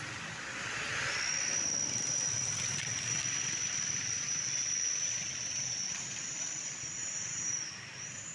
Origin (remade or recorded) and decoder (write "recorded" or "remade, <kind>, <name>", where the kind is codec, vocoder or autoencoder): remade, vocoder, BigVGAN v2